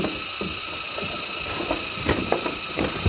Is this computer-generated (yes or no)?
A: no